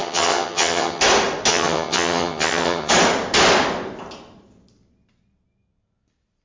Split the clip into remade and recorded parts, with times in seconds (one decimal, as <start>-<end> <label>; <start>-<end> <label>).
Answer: 0.0-1.0 remade; 1.0-1.5 recorded; 1.5-2.9 remade; 2.9-6.4 recorded